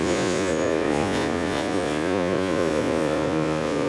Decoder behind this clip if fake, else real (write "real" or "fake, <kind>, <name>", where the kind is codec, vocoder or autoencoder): fake, vocoder, Vocos